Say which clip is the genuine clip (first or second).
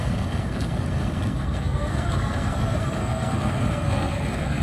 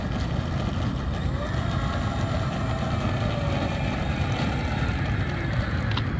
second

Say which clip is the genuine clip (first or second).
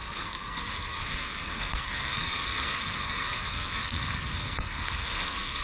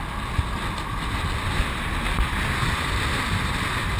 second